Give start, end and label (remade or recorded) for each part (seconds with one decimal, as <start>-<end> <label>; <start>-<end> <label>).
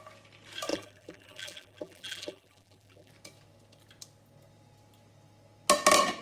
0.0-0.7 recorded; 0.7-3.1 remade; 3.1-6.2 recorded